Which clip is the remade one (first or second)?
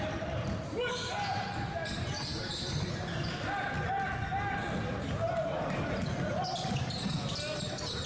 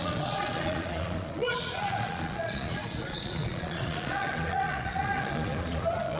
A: second